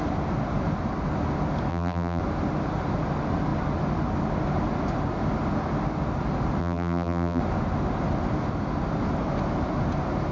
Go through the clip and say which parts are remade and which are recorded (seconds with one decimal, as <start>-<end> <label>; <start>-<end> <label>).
0.0-1.7 recorded; 1.7-2.2 remade; 2.2-6.6 recorded; 6.6-7.4 remade; 7.4-10.3 recorded